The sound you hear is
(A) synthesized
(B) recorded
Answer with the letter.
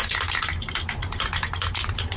B